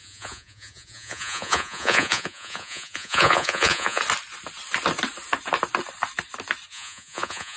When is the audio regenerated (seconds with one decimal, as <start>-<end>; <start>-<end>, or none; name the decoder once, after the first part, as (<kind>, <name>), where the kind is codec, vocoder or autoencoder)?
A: 0.0-4.0 (vocoder, Vocos); 6.7-7.6